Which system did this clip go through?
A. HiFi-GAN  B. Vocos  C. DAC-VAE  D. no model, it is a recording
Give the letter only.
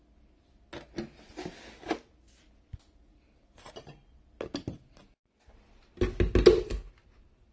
D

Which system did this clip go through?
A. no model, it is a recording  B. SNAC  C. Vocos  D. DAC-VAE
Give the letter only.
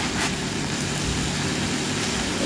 A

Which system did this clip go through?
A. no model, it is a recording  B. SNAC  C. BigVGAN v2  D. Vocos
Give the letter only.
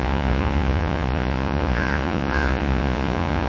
D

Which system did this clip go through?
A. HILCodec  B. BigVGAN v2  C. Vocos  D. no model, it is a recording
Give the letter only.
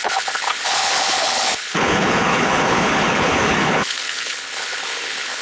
A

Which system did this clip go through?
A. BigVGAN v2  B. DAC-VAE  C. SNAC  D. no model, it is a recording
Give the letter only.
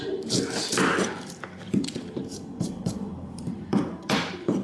A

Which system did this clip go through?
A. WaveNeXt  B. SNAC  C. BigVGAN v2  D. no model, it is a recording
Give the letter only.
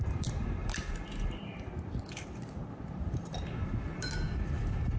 C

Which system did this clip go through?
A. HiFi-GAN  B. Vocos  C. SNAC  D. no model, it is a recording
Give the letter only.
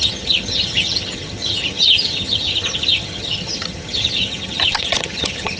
A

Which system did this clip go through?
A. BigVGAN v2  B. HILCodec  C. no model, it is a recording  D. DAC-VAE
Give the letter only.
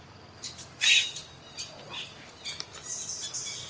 C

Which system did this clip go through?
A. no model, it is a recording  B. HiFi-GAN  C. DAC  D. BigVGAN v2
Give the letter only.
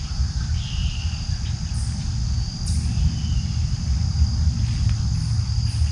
A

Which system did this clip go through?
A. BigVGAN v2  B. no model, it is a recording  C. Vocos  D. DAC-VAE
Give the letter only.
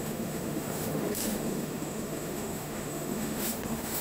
D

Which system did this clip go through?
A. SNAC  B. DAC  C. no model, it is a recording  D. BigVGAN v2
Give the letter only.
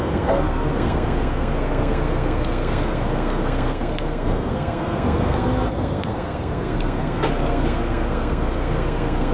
A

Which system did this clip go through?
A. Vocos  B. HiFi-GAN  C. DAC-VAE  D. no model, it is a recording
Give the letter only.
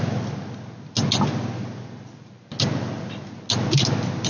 D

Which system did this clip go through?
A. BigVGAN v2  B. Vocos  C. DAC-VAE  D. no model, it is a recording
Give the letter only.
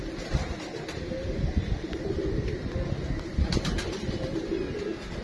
D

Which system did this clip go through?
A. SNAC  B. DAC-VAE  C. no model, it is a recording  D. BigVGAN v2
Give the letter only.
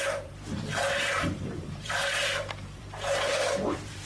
D